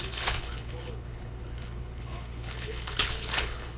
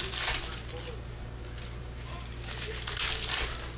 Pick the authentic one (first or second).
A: second